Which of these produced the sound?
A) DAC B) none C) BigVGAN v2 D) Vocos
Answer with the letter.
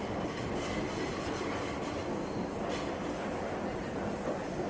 B